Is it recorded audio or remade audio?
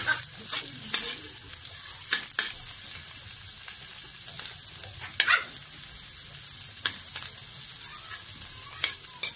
recorded